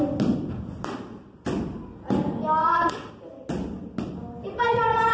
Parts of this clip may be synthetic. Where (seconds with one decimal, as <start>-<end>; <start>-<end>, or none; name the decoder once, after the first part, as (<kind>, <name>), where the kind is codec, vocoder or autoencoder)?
2.6-3.1 (vocoder, WaveNeXt)